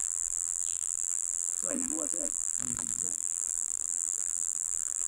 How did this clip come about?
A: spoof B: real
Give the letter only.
A